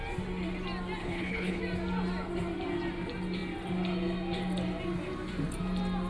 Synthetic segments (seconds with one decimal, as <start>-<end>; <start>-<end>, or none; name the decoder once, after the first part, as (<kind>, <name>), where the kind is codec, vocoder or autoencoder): 1.0-1.6 (codec, HILCodec)